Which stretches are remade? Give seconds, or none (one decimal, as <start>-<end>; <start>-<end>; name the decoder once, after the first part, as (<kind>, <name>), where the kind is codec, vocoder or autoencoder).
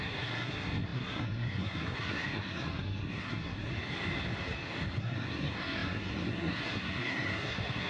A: 0.0-3.7 (codec, SNAC); 5.0-7.9